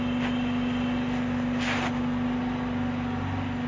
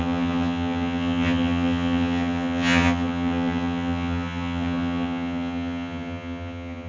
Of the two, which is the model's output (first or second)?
second